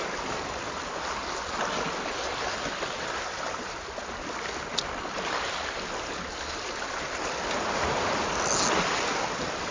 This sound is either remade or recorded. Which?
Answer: recorded